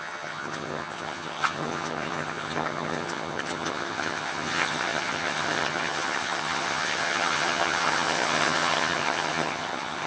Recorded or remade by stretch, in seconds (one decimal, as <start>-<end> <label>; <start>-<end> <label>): 0.0-10.1 remade